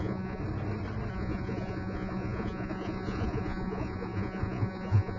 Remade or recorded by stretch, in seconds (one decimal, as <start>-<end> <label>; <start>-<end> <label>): 0.0-0.4 remade; 0.4-1.1 recorded; 1.1-5.2 remade